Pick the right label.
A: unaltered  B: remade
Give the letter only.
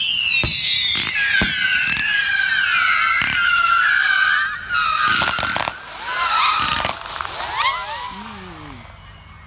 A